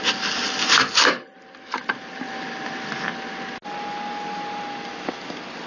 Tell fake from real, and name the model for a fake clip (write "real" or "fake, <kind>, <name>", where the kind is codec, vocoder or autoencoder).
real